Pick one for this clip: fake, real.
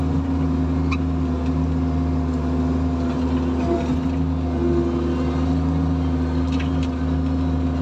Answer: real